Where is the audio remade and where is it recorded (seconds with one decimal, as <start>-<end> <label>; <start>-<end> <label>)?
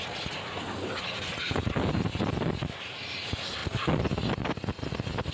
0.0-5.3 recorded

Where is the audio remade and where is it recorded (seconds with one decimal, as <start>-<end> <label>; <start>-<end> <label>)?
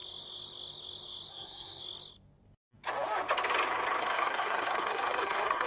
0.0-1.3 recorded; 1.3-1.8 remade; 1.8-4.0 recorded; 4.0-5.7 remade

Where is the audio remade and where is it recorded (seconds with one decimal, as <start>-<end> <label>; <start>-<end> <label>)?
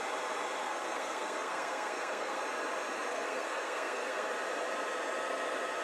0.0-0.6 recorded; 0.6-2.4 remade; 2.4-3.1 recorded; 3.1-4.3 remade; 4.3-5.8 recorded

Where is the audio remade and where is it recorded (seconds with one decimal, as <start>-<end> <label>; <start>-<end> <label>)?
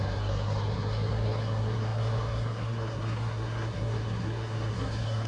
0.0-5.3 remade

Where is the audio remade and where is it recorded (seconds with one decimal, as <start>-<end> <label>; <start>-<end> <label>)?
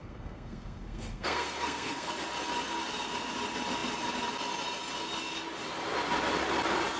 0.0-2.1 remade; 2.1-7.0 recorded